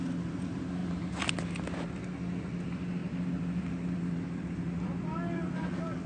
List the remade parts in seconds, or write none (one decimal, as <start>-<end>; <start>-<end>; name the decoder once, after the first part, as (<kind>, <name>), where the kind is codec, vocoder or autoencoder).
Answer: none